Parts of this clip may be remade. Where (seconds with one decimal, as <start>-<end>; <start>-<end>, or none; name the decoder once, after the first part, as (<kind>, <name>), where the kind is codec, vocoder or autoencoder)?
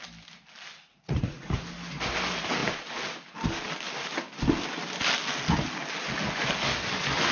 0.9-1.4 (vocoder, Vocos)